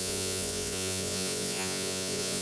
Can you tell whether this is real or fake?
fake